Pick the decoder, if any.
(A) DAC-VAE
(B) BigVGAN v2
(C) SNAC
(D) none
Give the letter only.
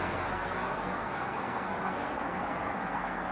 C